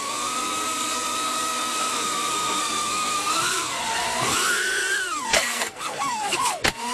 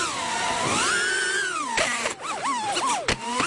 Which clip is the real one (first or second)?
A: second